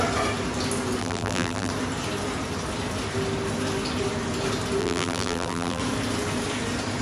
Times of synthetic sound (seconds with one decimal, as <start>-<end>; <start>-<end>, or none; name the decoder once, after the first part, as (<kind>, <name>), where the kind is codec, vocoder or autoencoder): 1.0-1.7 (vocoder, BigVGAN v2); 4.8-5.8